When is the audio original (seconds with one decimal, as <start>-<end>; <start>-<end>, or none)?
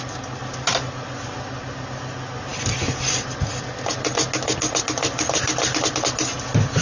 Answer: 0.0-6.8